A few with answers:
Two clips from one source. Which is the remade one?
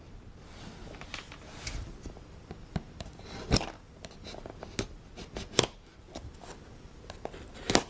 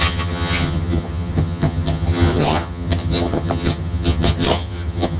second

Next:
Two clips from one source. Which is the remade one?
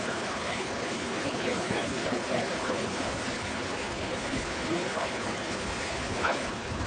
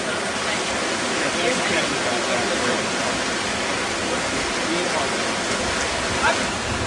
first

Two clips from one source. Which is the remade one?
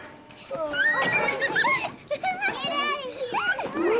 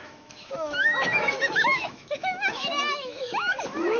second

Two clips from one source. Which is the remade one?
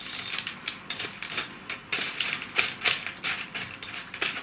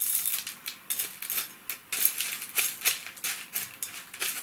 first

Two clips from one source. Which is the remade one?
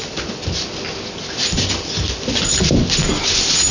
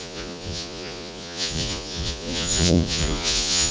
second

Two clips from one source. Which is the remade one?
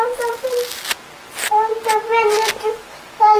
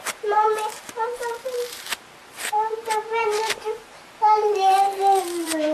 second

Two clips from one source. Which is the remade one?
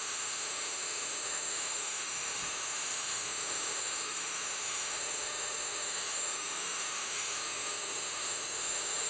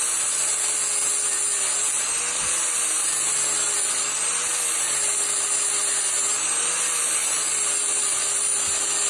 first